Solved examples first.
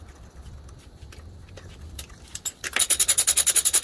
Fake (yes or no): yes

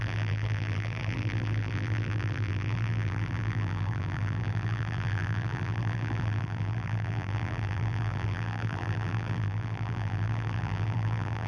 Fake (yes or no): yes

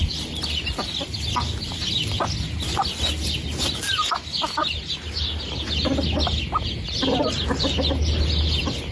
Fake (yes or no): no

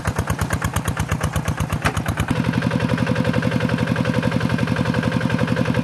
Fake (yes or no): no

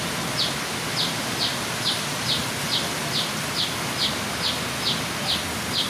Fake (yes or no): no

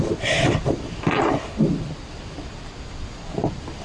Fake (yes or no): yes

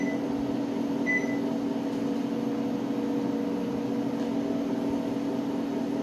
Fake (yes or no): no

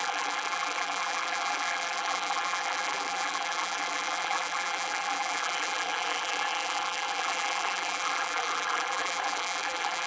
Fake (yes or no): yes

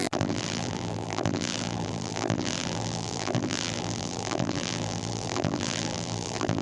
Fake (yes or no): yes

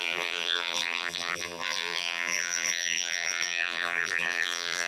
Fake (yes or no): yes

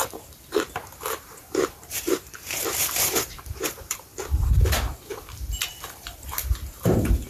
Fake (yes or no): yes